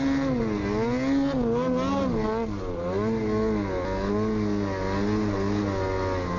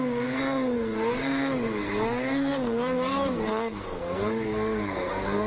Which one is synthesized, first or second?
second